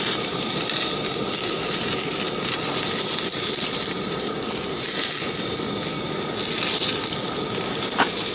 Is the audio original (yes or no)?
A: yes